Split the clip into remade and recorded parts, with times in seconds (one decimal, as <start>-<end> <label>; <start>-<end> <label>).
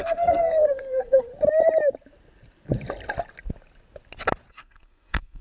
0.0-1.3 remade; 1.3-4.5 recorded; 4.5-5.4 remade